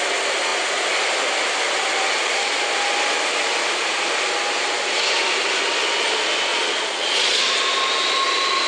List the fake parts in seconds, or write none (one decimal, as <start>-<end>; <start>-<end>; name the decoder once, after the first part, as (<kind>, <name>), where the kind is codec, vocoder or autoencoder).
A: 6.5-7.4 (vocoder, Vocos)